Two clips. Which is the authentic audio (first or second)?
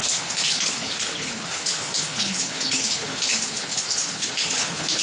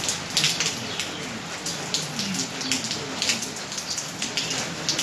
second